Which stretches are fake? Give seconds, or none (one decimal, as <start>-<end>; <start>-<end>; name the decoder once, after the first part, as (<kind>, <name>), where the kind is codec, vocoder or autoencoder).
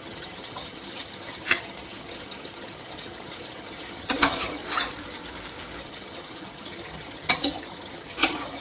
0.0-4.6 (vocoder, HiFi-GAN); 5.8-8.6